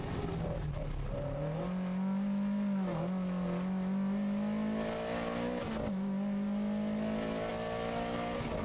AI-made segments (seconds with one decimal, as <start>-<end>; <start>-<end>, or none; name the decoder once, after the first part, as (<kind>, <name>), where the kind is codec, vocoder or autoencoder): none